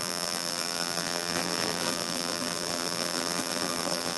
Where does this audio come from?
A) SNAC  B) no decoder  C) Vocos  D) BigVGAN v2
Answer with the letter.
D